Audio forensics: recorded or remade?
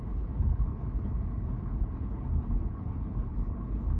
remade